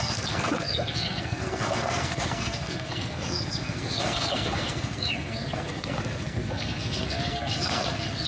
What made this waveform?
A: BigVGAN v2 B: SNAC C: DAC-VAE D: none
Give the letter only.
B